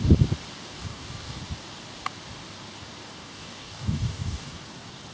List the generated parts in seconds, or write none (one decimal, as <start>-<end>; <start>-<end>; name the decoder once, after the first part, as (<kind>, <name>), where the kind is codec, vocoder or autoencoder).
0.8-1.4 (codec, DAC); 3.2-4.6